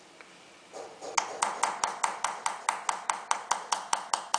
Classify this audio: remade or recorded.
recorded